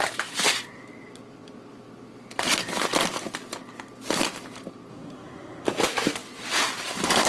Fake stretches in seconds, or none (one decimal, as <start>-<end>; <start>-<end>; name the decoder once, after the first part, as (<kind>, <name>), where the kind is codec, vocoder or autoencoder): 4.9-5.8 (codec, SNAC)